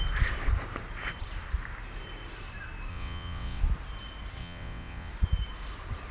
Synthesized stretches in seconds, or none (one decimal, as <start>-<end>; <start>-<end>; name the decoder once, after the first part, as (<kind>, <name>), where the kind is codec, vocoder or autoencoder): 2.9-3.6 (vocoder, WaveNeXt); 4.4-5.1